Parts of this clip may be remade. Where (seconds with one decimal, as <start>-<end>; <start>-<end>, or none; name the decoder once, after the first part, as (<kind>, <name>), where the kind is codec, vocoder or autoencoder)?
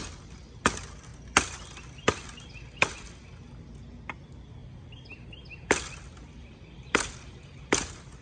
4.6-8.2 (vocoder, BigVGAN v2)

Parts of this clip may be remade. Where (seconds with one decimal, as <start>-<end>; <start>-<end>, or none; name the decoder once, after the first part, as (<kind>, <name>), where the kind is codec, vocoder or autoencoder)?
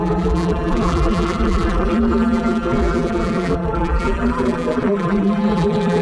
0.0-6.0 (vocoder, BigVGAN v2)